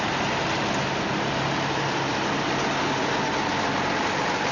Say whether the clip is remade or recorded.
recorded